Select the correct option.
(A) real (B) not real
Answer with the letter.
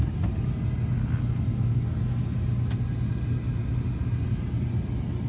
A